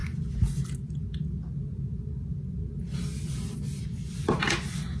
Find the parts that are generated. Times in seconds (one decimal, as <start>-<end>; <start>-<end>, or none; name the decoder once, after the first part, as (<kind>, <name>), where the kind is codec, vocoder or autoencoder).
none